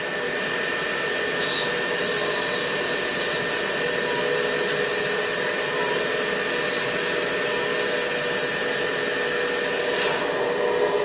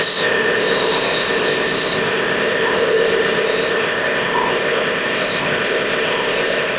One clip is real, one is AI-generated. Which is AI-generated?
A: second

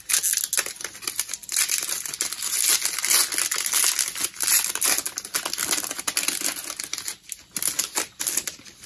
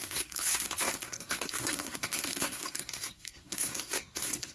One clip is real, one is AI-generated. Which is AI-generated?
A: second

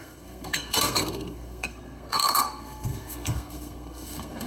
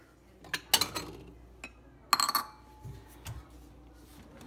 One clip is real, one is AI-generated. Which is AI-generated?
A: first